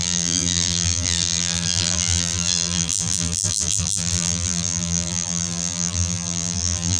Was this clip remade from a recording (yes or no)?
yes